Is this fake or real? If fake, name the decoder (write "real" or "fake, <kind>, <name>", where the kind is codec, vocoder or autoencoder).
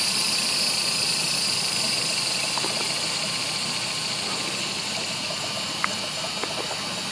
real